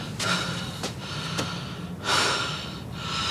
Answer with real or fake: real